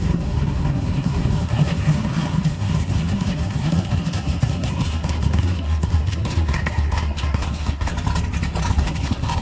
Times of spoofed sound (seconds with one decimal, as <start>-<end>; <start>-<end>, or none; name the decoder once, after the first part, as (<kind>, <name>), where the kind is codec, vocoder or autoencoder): 0.0-7.9 (codec, SNAC); 8.7-9.4